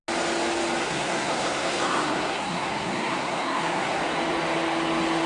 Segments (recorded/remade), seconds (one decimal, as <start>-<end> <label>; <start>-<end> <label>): 0.0-0.8 recorded; 0.8-4.0 remade; 4.0-5.3 recorded